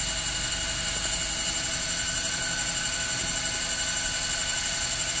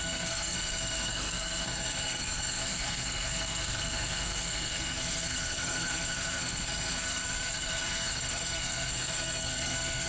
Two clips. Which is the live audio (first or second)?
first